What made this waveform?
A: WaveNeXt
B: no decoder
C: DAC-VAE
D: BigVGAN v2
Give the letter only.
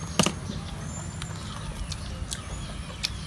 B